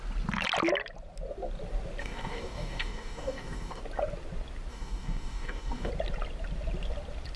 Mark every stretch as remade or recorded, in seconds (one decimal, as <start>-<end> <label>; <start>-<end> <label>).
0.0-2.0 recorded; 2.0-3.8 remade; 3.8-4.7 recorded; 4.7-5.9 remade; 5.9-7.4 recorded